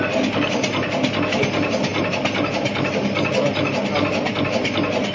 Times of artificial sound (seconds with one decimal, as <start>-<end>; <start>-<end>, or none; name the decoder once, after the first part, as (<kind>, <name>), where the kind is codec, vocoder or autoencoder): none